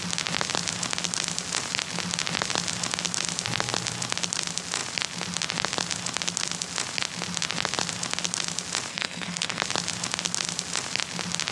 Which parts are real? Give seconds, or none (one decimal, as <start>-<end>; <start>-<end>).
0.0-8.9; 9.6-11.5